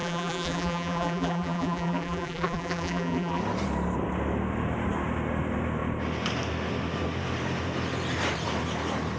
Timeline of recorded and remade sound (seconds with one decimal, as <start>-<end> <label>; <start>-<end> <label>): 0.0-3.4 remade; 3.4-9.2 recorded